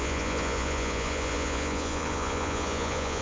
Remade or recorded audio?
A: remade